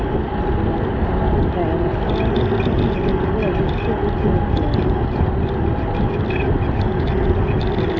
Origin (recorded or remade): recorded